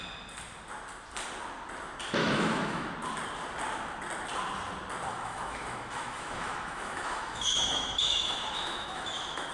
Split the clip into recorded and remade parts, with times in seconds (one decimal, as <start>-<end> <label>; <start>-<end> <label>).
0.0-2.2 recorded; 2.2-2.9 remade; 2.9-5.1 recorded; 5.1-9.5 remade